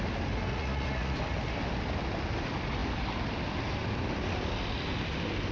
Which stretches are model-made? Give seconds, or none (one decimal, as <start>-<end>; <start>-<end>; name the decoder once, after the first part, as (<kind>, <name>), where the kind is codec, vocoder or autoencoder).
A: 0.5-1.2 (vocoder, Vocos)